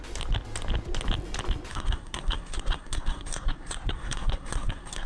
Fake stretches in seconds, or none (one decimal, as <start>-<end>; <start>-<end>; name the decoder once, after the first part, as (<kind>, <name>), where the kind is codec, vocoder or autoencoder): 1.7-5.1 (codec, SNAC)